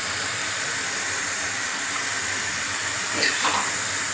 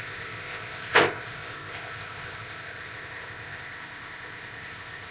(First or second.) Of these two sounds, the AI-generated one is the second